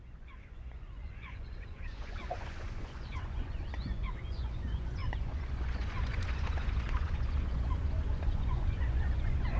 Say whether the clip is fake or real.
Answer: fake